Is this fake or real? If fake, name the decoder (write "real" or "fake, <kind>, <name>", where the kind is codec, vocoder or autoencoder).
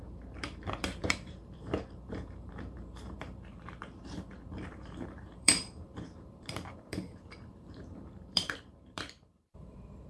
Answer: fake, vocoder, BigVGAN v2